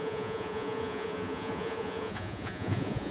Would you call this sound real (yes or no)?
no